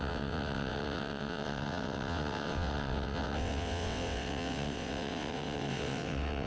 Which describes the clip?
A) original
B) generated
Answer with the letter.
B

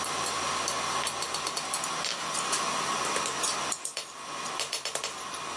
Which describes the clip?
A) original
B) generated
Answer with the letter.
A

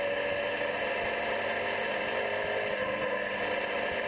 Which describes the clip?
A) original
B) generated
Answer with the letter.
A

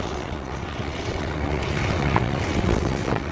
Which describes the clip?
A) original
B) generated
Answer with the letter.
B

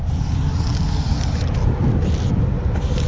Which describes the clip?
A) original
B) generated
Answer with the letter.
A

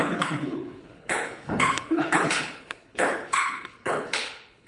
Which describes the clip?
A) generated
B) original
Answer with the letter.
A